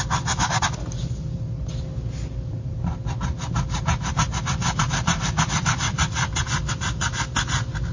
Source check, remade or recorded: recorded